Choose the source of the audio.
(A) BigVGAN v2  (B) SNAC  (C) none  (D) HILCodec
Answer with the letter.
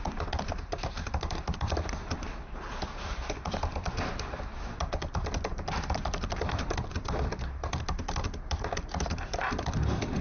A